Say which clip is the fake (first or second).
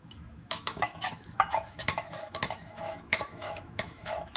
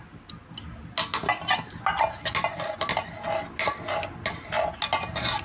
first